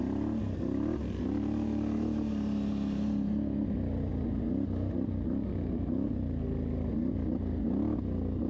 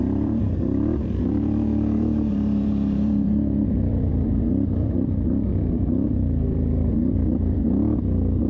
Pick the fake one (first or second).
second